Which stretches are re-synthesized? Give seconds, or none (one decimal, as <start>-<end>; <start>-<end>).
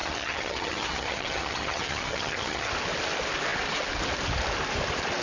0.0-2.7